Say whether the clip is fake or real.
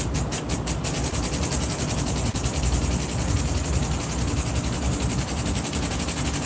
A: real